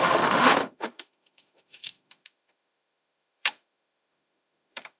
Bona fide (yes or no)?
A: no